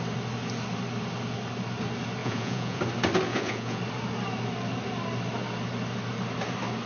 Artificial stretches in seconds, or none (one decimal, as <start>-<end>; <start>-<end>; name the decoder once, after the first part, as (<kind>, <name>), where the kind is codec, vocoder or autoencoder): 2.2-2.8 (vocoder, Vocos); 3.3-3.8